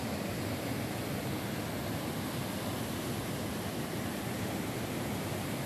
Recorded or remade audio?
recorded